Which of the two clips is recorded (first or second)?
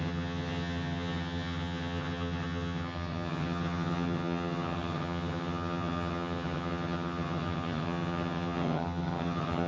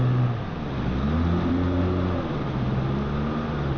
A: second